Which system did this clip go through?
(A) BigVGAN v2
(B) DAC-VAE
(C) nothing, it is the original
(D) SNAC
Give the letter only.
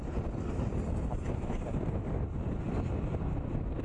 C